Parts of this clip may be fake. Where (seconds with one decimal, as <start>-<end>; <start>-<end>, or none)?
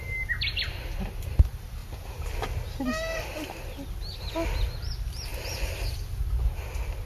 none